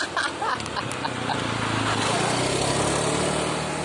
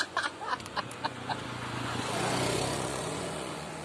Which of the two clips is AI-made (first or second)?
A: second